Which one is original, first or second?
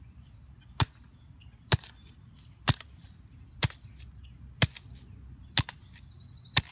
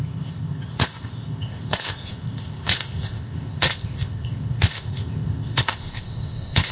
first